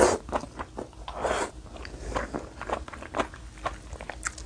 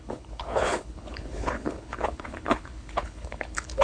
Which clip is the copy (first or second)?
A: second